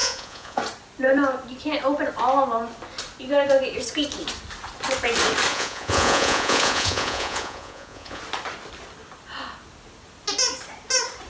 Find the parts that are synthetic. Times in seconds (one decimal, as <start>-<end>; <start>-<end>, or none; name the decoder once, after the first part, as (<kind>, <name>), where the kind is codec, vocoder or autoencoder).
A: 0.0-0.6 (vocoder, Vocos); 5.5-8.2